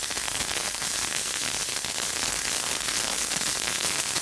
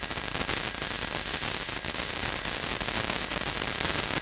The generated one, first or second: first